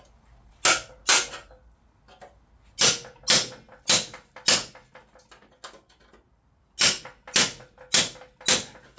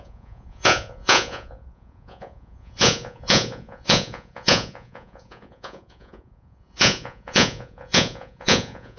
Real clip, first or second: first